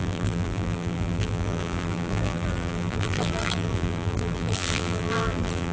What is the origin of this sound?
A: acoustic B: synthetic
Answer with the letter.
B